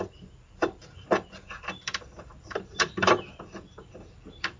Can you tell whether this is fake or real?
fake